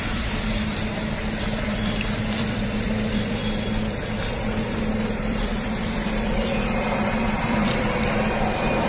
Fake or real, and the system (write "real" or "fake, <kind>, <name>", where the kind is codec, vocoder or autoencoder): fake, vocoder, BigVGAN v2